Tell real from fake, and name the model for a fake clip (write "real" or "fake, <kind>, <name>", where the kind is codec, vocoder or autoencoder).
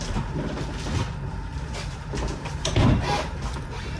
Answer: real